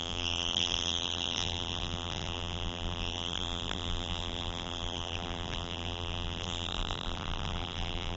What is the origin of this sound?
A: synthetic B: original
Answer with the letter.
A